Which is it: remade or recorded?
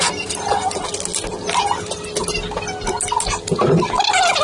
recorded